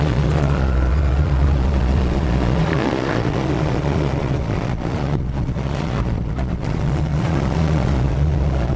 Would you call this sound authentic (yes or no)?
no